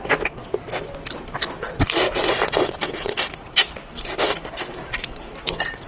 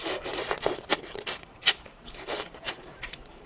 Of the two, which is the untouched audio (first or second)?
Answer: first